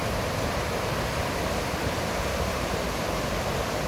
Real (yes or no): no